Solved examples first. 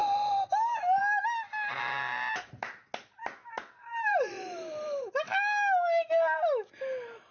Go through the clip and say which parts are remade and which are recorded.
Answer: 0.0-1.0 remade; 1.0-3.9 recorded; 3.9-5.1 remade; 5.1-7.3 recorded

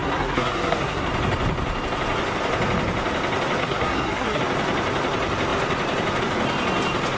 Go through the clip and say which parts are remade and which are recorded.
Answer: 0.0-1.1 remade; 1.1-3.6 recorded; 3.6-4.4 remade; 4.4-7.2 recorded

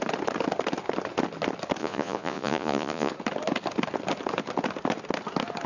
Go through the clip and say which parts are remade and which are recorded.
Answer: 0.0-1.8 recorded; 1.8-3.1 remade; 3.1-5.7 recorded

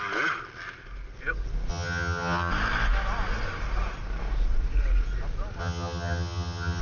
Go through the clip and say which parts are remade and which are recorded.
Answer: 0.0-1.7 recorded; 1.7-2.5 remade; 2.5-5.6 recorded; 5.6-6.8 remade

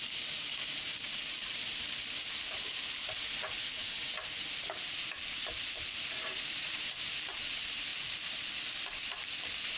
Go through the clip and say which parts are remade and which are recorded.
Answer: 0.0-7.9 remade; 7.9-9.8 recorded

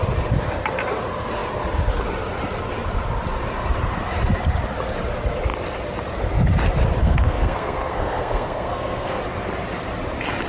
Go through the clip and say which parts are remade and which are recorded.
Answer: 0.0-7.0 recorded; 7.0-9.2 remade; 9.2-10.5 recorded